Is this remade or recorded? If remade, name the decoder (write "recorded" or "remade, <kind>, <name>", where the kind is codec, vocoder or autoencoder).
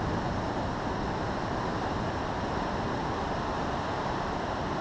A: recorded